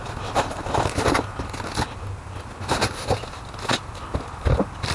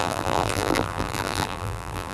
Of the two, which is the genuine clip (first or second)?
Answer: first